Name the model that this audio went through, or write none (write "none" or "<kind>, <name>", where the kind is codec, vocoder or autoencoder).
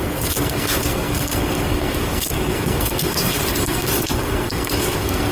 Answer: codec, SNAC